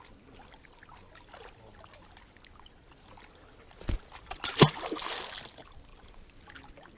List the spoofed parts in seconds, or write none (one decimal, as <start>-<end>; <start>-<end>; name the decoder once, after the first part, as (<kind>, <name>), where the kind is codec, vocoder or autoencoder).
none